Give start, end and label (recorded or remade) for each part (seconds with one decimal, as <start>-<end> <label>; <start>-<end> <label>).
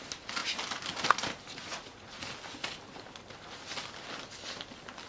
0.0-1.6 recorded; 1.6-2.3 remade; 2.3-5.1 recorded